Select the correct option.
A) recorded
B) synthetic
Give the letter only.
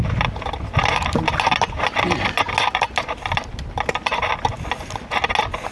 A